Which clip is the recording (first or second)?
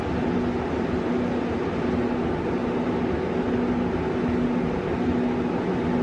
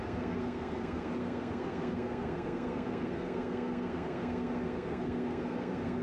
first